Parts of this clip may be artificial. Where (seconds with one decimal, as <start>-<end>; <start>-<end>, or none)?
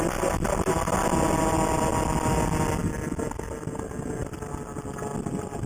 none